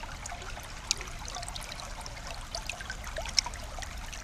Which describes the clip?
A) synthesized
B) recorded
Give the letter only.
B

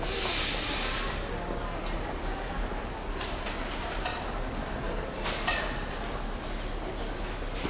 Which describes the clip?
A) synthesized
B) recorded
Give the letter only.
B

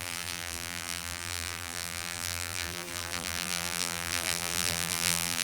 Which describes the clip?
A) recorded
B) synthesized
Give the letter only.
B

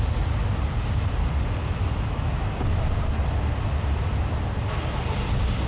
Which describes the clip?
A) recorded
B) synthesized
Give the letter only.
A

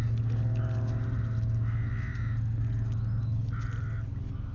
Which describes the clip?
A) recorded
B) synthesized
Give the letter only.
A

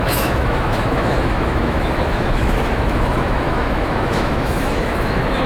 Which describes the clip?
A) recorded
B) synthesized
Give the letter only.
B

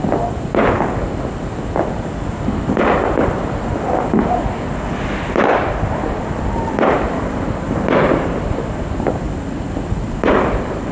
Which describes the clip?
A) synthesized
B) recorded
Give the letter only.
B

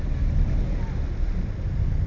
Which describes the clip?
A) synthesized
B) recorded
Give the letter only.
B